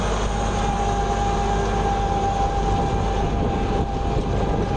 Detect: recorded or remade recorded